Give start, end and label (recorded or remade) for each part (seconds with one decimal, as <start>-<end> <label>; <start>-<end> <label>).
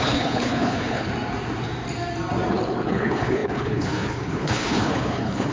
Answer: 0.0-1.1 remade; 1.1-2.5 recorded; 2.5-5.5 remade